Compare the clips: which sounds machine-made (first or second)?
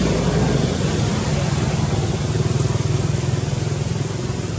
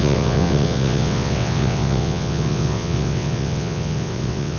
second